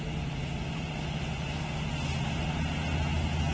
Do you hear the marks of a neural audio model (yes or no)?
no